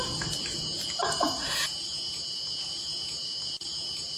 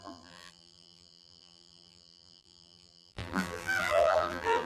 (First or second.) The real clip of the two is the first